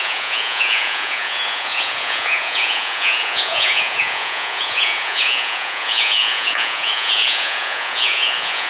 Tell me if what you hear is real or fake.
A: fake